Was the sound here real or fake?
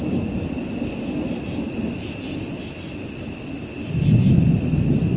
real